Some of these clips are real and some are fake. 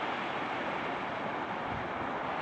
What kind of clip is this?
real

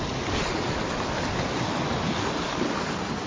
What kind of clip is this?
real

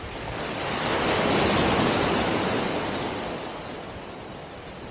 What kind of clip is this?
real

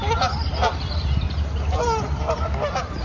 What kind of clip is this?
real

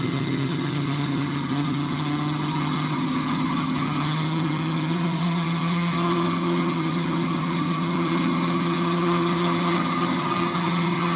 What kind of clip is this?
fake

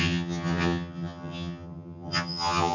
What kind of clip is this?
fake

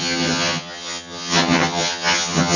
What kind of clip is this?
fake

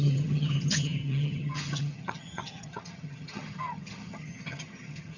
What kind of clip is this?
fake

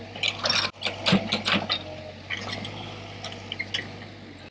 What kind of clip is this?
real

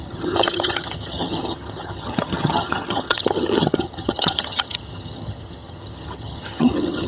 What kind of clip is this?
fake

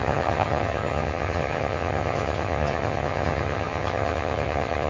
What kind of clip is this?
fake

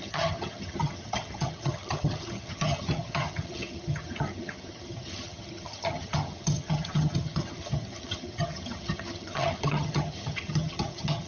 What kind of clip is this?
fake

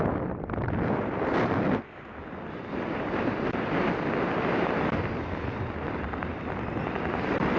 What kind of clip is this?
real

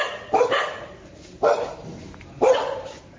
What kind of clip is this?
real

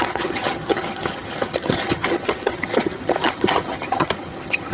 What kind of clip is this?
fake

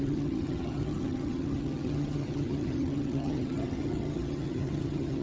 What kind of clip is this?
fake